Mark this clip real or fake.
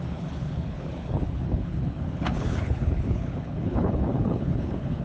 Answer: fake